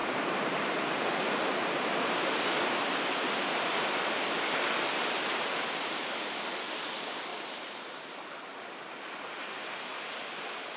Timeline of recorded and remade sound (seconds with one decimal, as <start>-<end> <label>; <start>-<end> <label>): 0.0-2.8 remade; 2.8-10.8 recorded